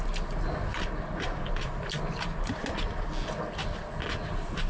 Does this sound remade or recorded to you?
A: recorded